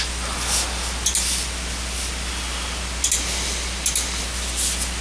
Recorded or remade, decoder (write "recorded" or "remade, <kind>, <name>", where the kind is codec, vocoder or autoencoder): recorded